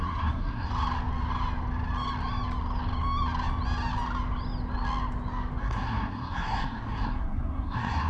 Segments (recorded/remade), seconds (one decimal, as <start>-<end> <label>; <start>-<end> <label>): 0.0-0.7 remade; 0.7-5.6 recorded; 5.6-8.1 remade